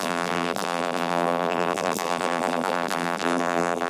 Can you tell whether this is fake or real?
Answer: fake